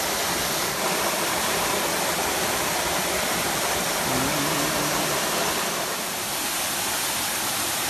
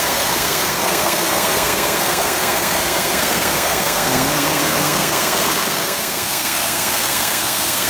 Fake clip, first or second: second